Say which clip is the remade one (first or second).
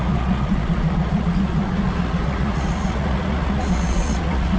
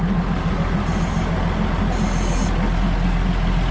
first